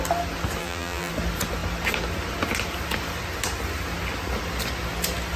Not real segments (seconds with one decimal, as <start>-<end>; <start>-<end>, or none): 0.6-1.1